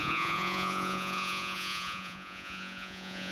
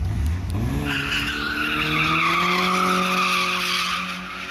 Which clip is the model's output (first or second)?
first